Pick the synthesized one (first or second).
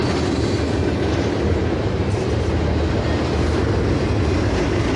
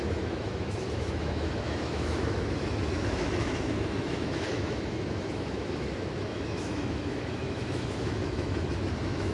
second